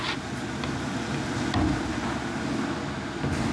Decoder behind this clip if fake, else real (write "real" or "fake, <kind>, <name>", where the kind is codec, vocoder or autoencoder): real